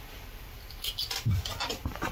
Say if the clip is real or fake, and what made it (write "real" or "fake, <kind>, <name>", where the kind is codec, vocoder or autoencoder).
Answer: real